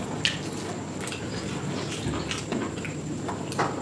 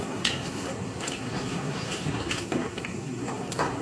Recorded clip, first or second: first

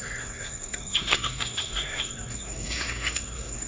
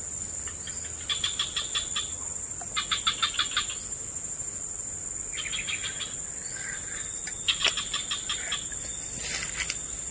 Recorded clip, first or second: second